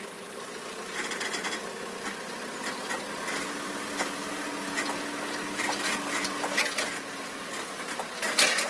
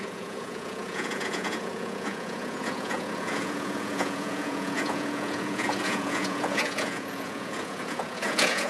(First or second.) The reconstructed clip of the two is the second